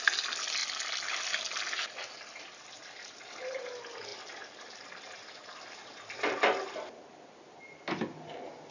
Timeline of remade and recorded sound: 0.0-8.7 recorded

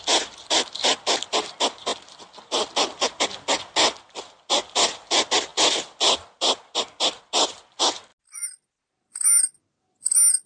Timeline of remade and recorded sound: 0.0-10.5 recorded